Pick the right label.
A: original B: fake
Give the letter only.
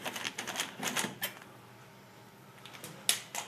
A